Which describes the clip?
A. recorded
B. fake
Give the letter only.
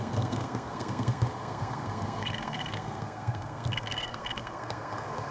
B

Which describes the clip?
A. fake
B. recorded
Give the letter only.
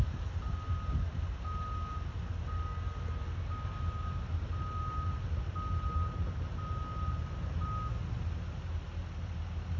B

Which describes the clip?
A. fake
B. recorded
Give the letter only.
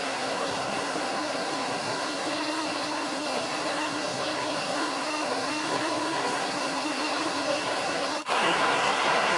A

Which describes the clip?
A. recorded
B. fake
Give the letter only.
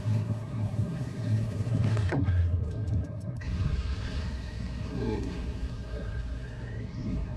B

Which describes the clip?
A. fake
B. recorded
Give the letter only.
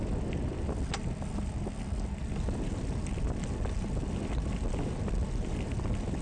B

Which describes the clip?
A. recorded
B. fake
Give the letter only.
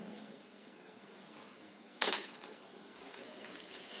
B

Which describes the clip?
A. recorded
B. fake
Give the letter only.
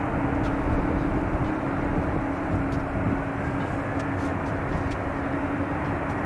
A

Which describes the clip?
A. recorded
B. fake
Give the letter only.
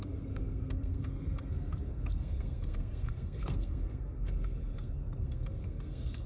B